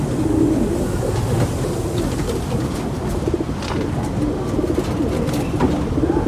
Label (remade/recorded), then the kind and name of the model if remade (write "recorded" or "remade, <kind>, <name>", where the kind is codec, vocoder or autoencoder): recorded